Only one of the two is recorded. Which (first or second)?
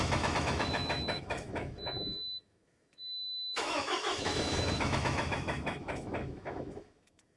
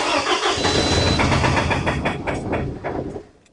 second